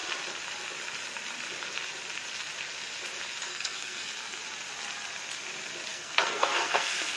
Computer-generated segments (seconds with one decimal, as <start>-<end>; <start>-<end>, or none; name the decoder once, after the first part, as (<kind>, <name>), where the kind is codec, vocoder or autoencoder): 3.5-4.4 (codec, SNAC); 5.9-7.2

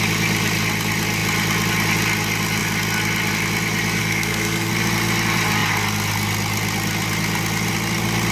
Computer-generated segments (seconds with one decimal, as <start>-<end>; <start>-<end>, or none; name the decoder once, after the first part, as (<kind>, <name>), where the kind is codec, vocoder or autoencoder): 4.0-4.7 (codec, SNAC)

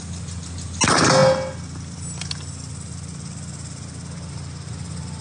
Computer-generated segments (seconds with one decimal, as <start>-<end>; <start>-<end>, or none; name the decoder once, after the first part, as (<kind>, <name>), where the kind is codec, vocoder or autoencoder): none

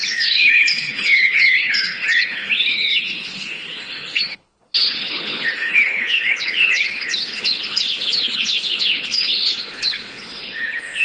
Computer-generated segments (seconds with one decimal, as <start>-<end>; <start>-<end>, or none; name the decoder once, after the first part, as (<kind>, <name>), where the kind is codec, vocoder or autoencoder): 0.0-11.0 (codec, HILCodec)

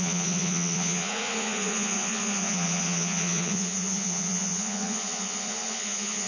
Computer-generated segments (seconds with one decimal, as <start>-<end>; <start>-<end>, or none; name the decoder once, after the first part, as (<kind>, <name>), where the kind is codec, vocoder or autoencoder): 0.0-6.3 (vocoder, Vocos)

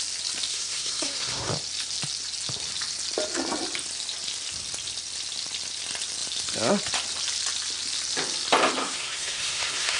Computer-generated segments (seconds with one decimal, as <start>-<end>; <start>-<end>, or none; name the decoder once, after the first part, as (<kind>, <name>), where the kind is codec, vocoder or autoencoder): 0.5-1.5 (codec, SNAC); 8.8-10.0

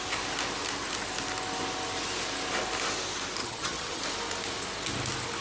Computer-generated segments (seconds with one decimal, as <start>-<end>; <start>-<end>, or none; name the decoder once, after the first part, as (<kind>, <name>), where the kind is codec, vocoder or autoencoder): 3.4-4.0 (vocoder, HiFi-GAN)

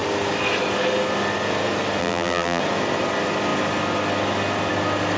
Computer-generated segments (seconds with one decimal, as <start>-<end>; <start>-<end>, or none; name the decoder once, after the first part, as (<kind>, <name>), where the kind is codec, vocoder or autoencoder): 2.0-2.6 (vocoder, BigVGAN v2)